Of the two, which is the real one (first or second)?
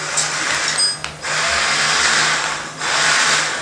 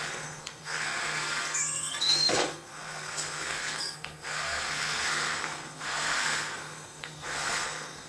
first